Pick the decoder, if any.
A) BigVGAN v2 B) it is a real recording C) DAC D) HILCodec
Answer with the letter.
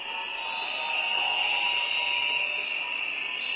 B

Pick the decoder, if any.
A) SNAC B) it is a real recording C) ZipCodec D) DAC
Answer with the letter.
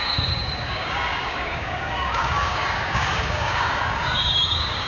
D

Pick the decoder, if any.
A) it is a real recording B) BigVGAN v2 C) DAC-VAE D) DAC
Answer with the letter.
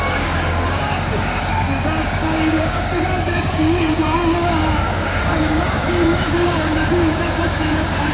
D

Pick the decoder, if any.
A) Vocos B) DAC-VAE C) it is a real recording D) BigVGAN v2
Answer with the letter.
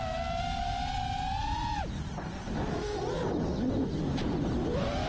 C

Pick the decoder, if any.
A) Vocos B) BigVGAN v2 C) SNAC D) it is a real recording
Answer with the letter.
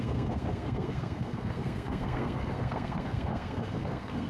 C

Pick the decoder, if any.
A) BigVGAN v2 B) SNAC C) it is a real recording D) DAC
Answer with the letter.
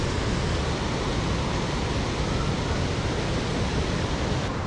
C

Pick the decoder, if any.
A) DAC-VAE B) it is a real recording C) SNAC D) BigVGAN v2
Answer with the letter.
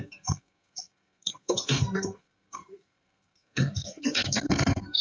C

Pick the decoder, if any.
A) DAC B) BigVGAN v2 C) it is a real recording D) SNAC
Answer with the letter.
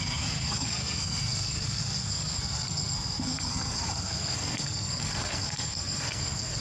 D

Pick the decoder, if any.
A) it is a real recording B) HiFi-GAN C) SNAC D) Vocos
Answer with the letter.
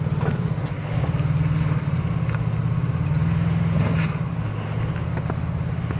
A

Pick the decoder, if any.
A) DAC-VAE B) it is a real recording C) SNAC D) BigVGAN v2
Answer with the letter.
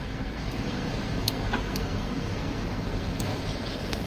C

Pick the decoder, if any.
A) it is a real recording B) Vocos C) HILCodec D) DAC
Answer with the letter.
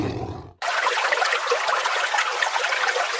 B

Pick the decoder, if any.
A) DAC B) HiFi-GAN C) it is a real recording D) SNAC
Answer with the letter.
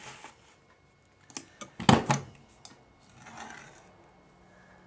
C